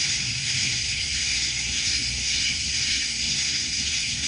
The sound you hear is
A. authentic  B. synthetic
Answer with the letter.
B